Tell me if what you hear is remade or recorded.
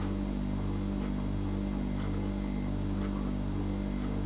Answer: recorded